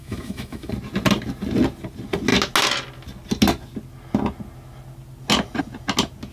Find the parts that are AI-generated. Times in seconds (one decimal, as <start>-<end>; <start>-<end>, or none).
0.0-0.7